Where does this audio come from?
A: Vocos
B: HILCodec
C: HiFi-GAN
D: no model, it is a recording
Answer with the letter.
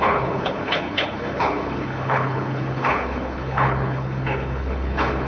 B